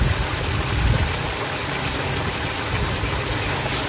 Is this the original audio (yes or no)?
yes